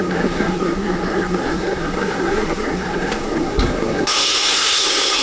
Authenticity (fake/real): fake